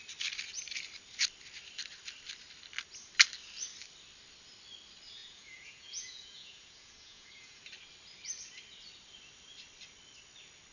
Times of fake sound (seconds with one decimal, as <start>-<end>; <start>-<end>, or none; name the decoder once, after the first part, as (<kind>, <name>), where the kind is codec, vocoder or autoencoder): 5.2-7.6 (vocoder, Vocos)